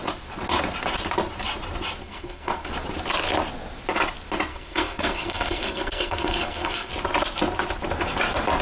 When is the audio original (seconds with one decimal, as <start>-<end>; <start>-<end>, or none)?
0.0-2.0; 2.7-4.5; 6.9-8.6